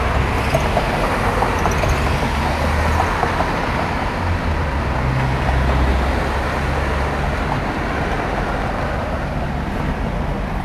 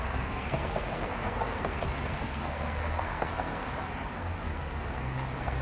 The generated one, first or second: second